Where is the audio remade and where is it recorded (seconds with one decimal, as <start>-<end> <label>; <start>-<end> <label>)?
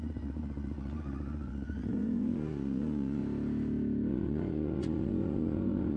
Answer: 0.0-3.2 remade; 3.2-4.1 recorded; 4.1-6.0 remade